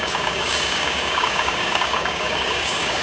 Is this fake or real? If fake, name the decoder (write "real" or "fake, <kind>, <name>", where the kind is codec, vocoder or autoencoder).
fake, codec, DAC